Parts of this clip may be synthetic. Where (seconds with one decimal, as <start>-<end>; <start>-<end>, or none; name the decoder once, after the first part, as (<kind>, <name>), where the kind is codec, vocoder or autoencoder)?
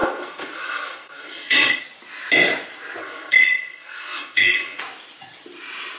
0.0-1.8 (codec, SNAC); 3.0-4.8